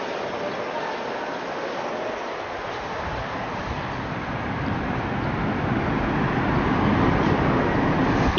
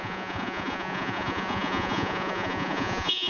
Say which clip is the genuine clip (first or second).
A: first